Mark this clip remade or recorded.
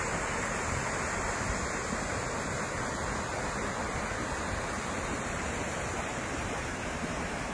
recorded